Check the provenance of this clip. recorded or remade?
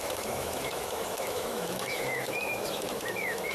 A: remade